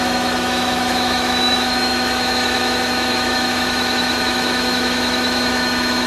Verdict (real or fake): fake